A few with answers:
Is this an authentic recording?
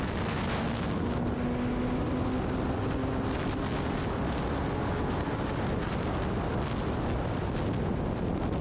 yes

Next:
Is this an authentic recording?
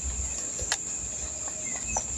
yes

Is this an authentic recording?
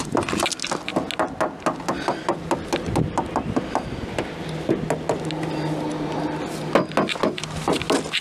yes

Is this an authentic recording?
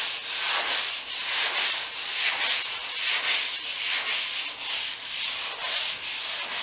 yes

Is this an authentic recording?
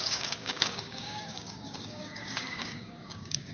no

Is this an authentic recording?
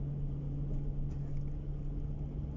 yes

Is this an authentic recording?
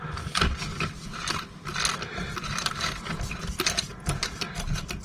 yes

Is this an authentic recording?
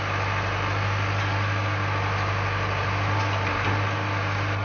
yes